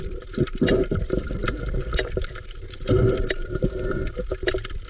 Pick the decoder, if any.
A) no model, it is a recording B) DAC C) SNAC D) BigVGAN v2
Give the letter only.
A